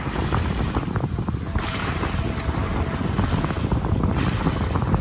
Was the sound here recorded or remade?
recorded